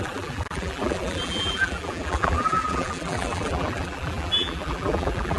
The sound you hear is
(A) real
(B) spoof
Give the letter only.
B